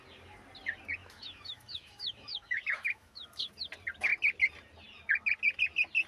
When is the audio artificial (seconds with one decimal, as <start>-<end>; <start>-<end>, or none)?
1.0-3.5

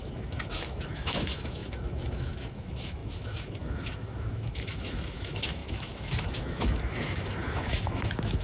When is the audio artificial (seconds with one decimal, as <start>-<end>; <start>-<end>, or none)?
0.0-8.4

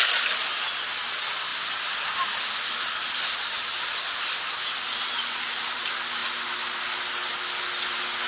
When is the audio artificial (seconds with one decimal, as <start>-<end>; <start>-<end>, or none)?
none

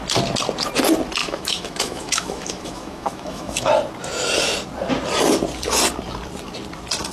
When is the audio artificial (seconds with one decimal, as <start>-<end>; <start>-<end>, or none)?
1.2-3.7

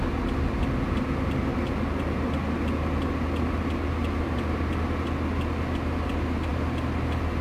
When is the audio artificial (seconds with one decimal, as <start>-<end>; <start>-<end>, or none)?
none